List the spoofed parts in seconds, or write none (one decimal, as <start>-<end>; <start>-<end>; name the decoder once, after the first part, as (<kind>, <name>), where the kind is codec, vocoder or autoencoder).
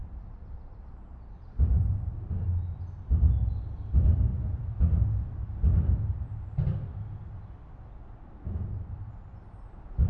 0.0-2.3 (vocoder, BigVGAN v2)